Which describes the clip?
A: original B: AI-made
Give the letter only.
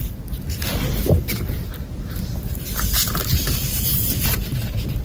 B